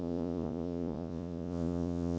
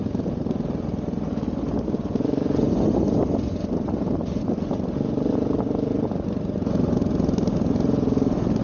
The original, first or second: second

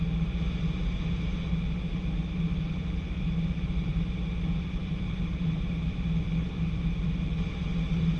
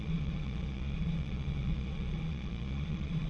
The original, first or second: first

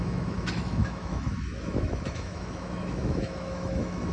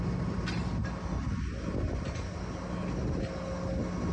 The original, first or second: second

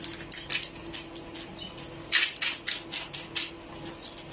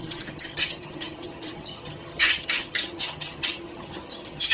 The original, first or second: first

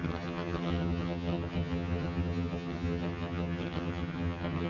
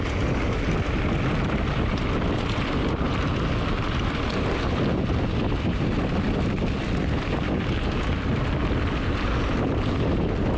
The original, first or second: second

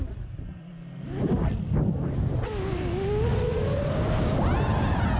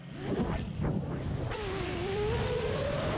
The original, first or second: first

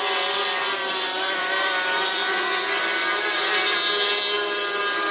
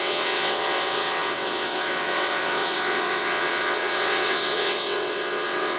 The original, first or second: first